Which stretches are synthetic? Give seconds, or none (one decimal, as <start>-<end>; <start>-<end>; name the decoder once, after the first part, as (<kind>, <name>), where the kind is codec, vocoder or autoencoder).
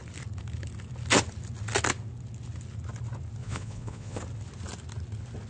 3.4-4.2 (vocoder, Vocos)